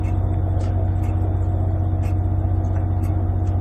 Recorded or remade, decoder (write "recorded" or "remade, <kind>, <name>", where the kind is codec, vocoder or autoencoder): recorded